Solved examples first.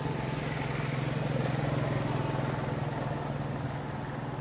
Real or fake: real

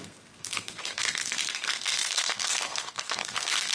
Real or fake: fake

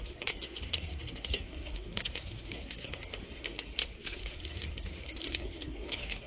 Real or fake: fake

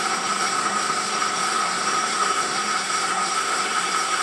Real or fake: fake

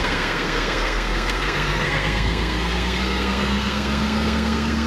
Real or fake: fake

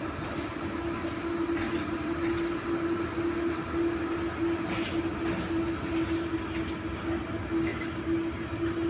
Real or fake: real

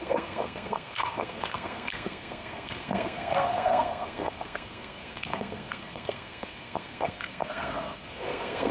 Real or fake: fake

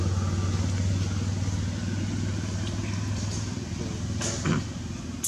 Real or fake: real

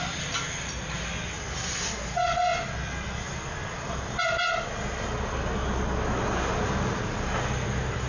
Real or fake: real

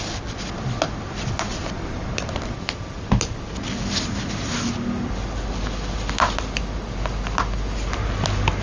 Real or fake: real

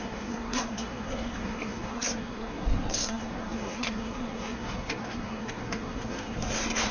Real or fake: fake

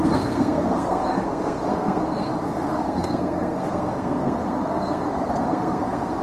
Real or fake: fake